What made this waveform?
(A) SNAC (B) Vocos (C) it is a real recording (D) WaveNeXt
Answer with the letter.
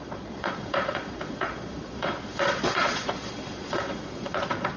B